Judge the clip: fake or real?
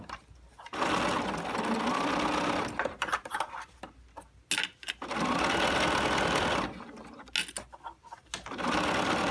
real